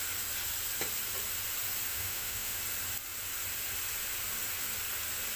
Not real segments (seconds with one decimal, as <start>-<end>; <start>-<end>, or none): 1.9-2.6